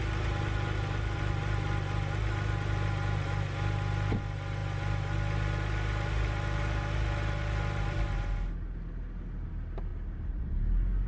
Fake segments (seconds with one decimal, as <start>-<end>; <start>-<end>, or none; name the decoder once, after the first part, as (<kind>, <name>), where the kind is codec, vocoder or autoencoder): none